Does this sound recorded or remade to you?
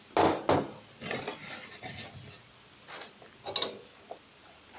recorded